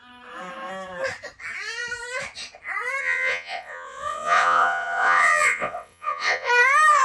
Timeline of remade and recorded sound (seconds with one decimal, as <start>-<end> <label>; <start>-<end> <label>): 0.0-3.0 recorded; 3.0-6.5 remade; 6.5-7.0 recorded